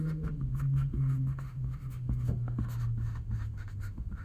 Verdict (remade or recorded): remade